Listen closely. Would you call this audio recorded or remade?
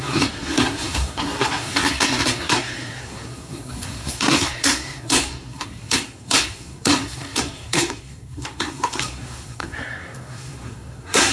remade